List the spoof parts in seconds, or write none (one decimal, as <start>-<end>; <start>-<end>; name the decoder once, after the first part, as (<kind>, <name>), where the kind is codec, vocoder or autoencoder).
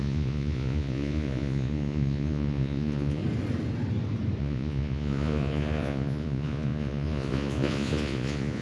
0.0-3.2 (vocoder, Vocos); 4.4-8.6